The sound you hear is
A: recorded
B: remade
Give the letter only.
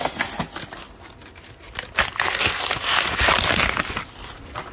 A